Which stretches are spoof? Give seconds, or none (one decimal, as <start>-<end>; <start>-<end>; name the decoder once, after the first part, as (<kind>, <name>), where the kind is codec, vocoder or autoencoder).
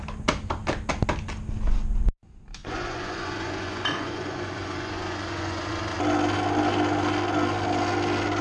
2.6-5.7 (vocoder, Vocos)